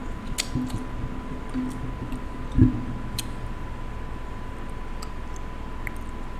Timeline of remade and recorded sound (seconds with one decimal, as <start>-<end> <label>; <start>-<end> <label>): 0.0-6.4 recorded